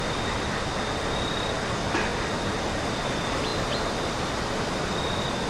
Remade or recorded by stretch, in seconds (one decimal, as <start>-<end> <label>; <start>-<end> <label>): 0.0-5.5 recorded